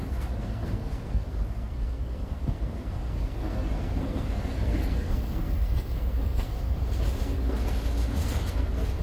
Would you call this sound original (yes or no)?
no